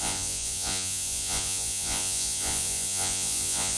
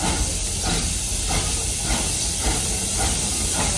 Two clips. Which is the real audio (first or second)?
second